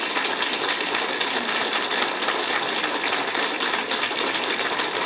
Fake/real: real